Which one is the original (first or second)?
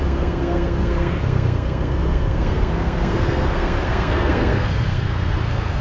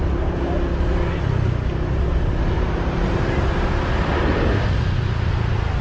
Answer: second